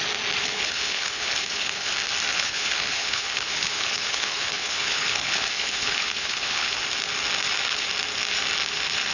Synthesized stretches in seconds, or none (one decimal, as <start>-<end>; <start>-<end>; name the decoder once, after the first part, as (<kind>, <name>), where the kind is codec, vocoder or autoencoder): 0.4-1.9 (codec, HILCodec); 2.3-6.8